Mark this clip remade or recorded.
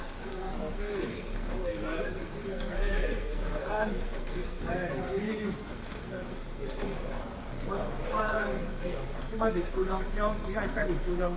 remade